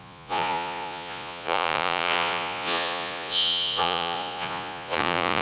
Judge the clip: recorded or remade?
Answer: remade